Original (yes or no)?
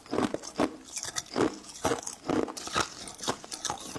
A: yes